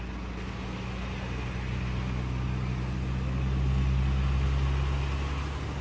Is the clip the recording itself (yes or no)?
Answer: yes